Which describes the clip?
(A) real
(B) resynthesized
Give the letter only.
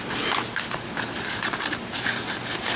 A